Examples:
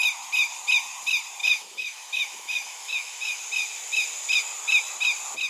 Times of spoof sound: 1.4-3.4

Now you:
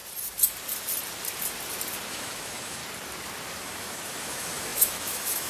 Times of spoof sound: 2.1-2.8; 3.6-5.5

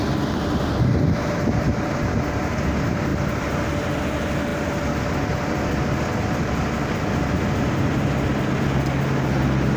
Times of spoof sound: none

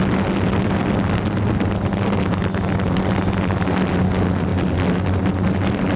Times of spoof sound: none

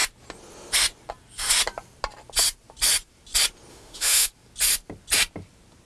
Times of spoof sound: 3.7-4.3

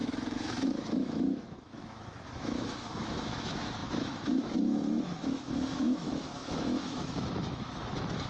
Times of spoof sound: 0.0-8.3